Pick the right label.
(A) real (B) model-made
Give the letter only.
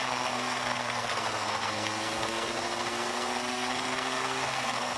B